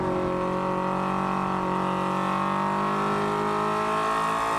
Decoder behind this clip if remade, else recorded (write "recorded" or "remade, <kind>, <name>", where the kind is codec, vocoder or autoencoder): recorded